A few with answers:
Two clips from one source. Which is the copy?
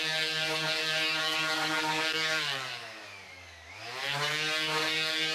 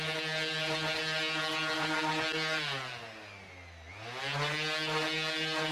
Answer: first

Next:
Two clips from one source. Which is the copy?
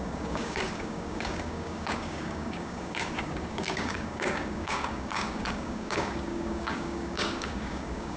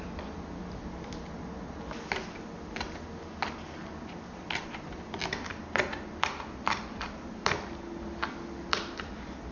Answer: first